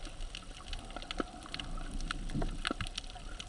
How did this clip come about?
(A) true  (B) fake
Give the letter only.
A